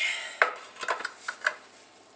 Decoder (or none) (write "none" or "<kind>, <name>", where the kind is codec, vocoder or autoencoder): none